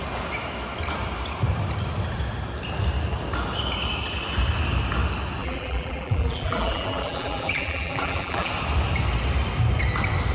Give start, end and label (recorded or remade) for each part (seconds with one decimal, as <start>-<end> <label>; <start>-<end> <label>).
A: 0.0-5.4 recorded; 5.4-8.5 remade; 8.5-10.3 recorded